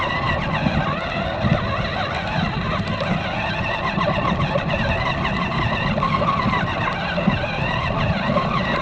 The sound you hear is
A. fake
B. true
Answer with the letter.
B